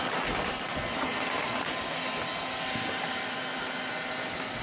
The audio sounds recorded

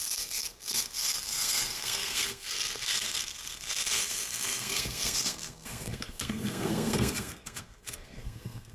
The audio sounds remade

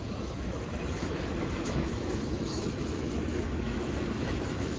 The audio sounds remade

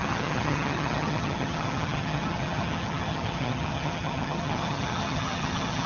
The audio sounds remade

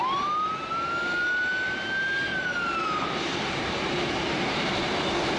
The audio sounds recorded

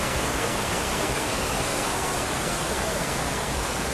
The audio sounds remade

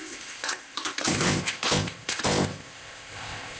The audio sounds remade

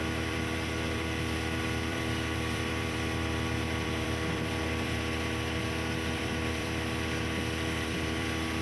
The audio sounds remade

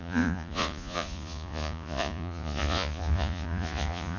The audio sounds remade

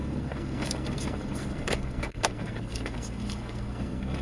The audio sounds remade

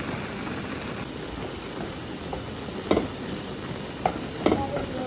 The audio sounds recorded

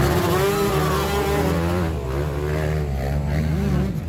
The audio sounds recorded